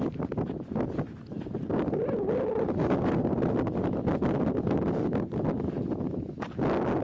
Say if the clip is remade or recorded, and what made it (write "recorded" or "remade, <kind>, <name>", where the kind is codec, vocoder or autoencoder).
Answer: recorded